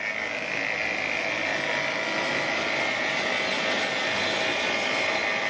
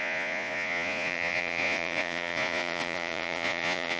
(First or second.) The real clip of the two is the first